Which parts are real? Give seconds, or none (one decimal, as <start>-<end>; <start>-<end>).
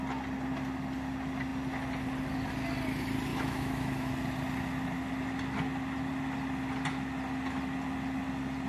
0.0-3.3; 4.1-8.7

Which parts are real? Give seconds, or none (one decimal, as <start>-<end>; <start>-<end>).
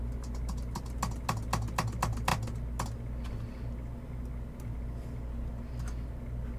0.0-6.6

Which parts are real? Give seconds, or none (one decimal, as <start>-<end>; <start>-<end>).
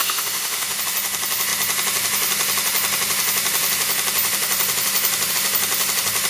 0.8-6.3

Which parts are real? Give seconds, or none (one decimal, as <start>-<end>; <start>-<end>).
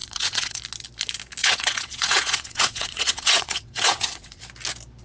0.6-1.4; 4.4-5.0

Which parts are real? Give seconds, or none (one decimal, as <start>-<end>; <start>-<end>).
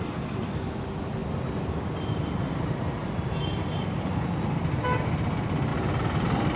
0.0-1.2; 2.5-3.5; 4.4-5.7